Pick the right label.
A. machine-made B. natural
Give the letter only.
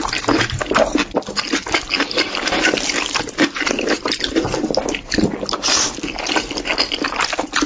B